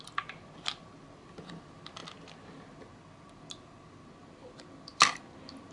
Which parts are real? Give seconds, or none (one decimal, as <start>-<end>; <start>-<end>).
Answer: 0.0-5.7